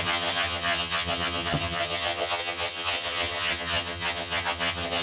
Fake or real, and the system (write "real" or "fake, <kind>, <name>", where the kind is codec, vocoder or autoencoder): fake, vocoder, HiFi-GAN